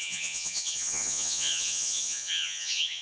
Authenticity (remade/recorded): remade